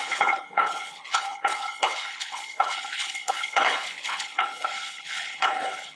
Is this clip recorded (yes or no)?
no